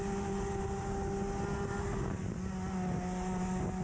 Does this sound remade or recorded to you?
recorded